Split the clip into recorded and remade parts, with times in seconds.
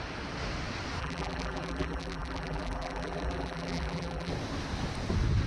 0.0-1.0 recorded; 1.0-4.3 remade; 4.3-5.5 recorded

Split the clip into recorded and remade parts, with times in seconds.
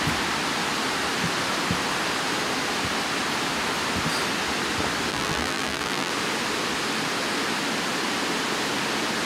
0.0-5.1 recorded; 5.1-6.1 remade; 6.1-9.3 recorded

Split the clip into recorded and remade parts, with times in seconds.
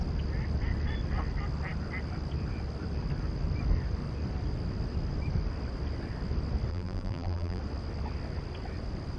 0.0-6.7 recorded; 6.7-7.6 remade; 7.6-9.2 recorded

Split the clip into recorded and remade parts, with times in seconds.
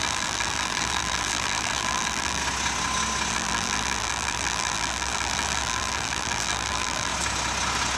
0.0-2.4 remade; 2.4-3.3 recorded; 3.3-7.1 remade; 7.1-8.0 recorded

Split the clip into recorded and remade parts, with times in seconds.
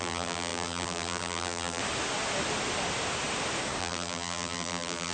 0.0-1.8 remade; 1.8-3.8 recorded; 3.8-5.1 remade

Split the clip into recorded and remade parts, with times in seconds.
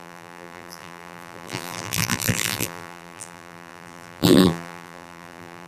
0.0-5.7 remade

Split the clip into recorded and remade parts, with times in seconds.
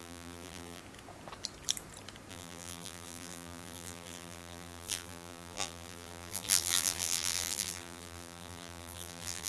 0.0-0.8 remade; 0.8-2.3 recorded; 2.3-9.5 remade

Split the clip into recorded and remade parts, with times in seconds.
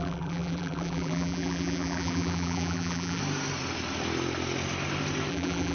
0.0-3.2 remade; 3.2-5.3 recorded; 5.3-5.7 remade